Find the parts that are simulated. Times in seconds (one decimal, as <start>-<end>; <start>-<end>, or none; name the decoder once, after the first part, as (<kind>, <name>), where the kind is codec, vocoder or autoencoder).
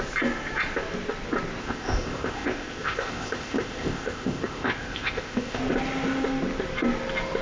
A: 1.6-5.6 (codec, ZipCodec)